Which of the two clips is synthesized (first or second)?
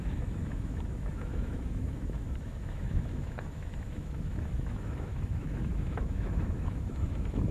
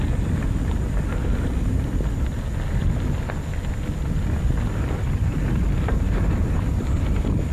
first